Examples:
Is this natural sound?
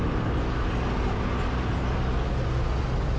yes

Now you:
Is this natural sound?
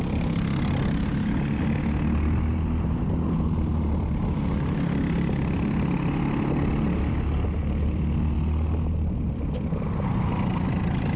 yes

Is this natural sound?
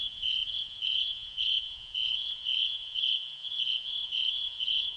no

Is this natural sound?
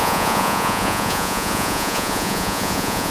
no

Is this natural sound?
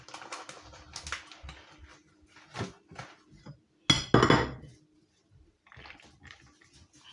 yes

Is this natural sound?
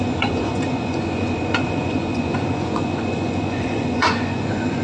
no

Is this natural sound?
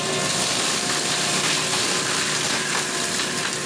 yes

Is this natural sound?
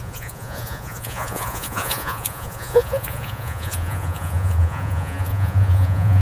no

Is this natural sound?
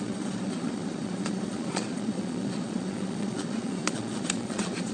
no